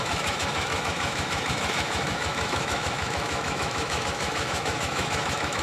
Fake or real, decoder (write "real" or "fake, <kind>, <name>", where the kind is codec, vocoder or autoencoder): fake, autoencoder, DAC-VAE